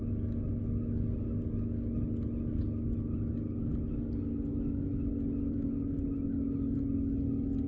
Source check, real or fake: real